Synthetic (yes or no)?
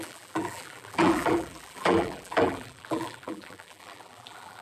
yes